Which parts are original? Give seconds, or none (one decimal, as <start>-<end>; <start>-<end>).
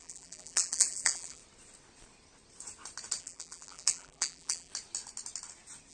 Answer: 1.4-3.2; 4.7-5.9